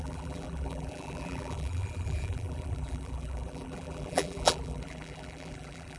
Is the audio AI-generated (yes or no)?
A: yes